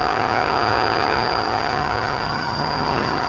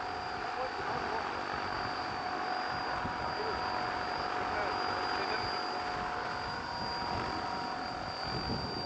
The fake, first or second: first